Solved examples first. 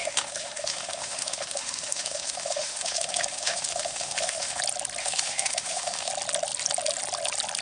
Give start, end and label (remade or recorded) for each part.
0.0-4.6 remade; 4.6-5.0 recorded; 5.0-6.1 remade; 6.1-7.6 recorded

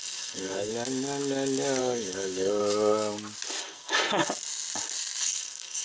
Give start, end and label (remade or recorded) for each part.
0.0-0.7 remade; 0.7-1.8 recorded; 1.8-2.6 remade; 2.6-3.6 recorded; 3.6-4.2 remade; 4.2-5.2 recorded; 5.2-5.8 remade